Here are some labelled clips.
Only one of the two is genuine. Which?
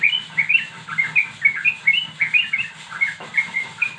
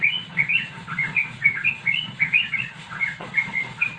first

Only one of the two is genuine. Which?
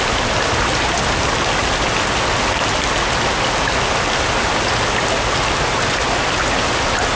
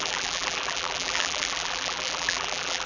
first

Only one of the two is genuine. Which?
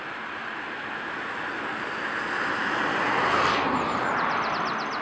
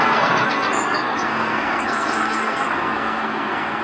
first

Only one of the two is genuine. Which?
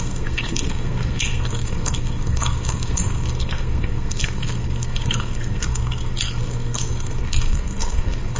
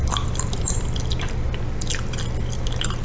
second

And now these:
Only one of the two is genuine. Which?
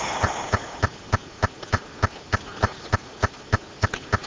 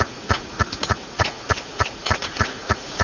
first